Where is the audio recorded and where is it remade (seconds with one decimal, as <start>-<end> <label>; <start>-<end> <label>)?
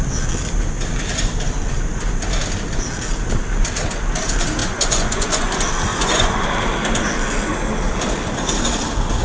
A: 0.0-4.6 recorded; 4.6-5.5 remade; 5.5-5.9 recorded; 5.9-6.4 remade; 6.4-9.2 recorded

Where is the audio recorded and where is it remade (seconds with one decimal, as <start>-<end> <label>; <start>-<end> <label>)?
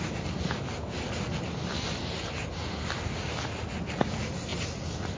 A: 0.0-5.2 recorded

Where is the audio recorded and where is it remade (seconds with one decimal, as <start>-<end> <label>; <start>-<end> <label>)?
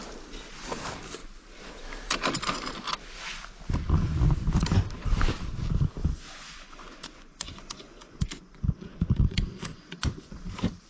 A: 0.0-6.0 recorded; 6.0-10.4 remade; 10.4-10.9 recorded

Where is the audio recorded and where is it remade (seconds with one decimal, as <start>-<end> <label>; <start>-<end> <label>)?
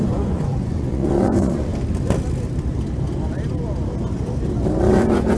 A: 0.0-1.7 remade; 1.7-4.9 recorded; 4.9-5.4 remade